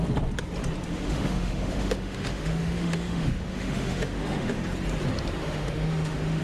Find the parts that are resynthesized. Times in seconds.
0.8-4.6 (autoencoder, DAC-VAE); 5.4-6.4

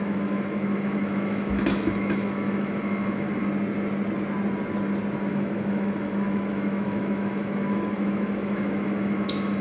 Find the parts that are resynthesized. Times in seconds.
0.0-3.4 (autoencoder, DAC-VAE); 5.3-9.6

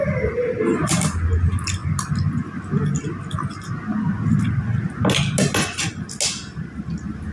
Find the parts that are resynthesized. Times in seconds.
none

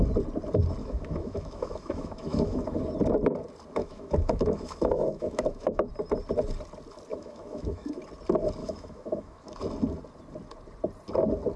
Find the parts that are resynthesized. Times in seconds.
0.8-2.8 (autoencoder, DAC-VAE); 3.8-5.9; 7.1-7.9; 8.6-9.6

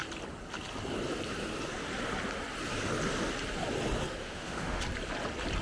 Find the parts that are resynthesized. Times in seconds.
4.2-4.8 (autoencoder, DAC-VAE)

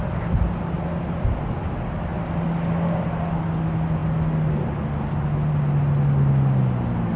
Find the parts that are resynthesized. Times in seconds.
none